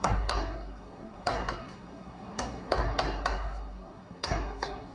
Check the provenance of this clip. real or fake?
fake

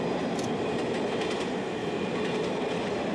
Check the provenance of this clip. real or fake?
real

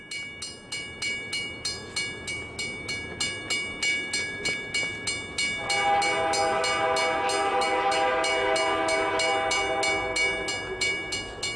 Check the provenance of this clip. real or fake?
real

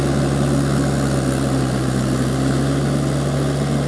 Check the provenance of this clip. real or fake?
real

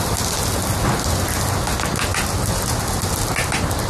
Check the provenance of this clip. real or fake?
real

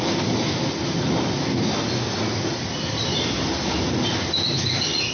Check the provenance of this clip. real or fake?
real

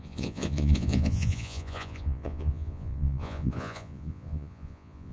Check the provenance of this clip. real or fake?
fake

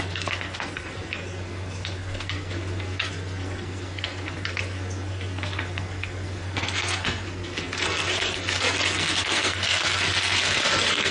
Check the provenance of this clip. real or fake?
fake